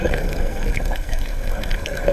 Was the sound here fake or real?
fake